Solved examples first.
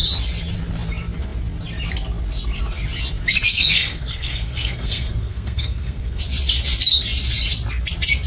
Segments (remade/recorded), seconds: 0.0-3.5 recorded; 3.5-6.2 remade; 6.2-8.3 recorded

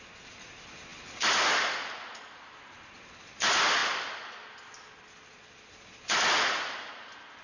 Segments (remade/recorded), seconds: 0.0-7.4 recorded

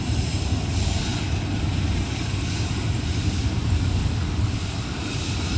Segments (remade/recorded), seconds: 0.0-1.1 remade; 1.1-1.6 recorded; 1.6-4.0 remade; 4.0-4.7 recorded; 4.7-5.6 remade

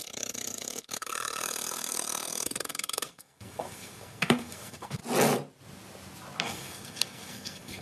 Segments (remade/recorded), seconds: 0.0-5.0 remade; 5.0-6.4 recorded; 6.4-7.8 remade

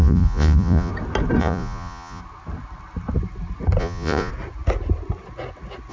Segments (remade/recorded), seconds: 0.0-0.9 remade; 0.9-1.4 recorded; 1.4-2.2 remade; 2.2-3.8 recorded; 3.8-4.3 remade; 4.3-5.9 recorded

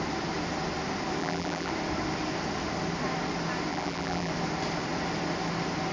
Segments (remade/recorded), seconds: 0.0-1.2 recorded; 1.2-1.7 remade; 1.7-3.7 recorded; 3.7-4.3 remade; 4.3-5.9 recorded

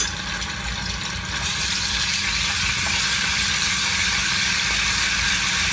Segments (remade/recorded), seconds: 0.0-5.7 recorded

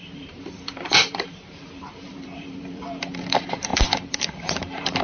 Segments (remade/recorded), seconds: 0.0-5.0 remade